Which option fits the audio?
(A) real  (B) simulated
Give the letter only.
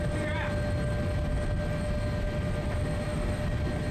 A